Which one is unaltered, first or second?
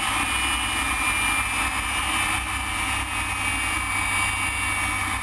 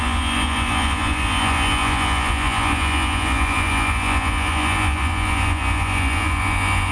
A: first